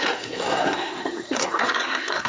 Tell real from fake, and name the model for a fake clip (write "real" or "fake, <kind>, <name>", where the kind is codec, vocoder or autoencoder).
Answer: fake, codec, SNAC